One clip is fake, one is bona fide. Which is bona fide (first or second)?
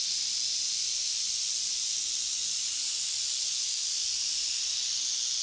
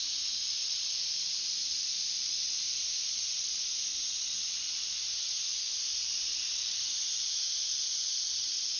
first